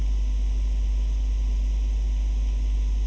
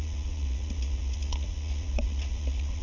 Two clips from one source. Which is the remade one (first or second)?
second